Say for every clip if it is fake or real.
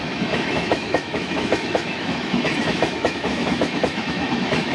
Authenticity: fake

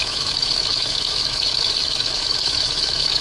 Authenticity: fake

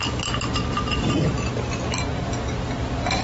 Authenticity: real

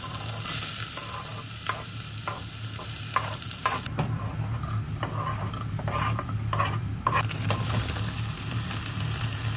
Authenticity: real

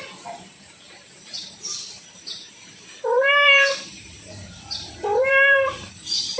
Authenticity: fake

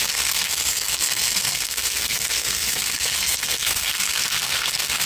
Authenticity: fake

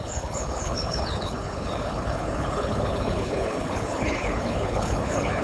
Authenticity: fake